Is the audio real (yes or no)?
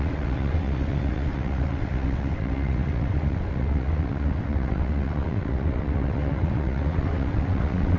no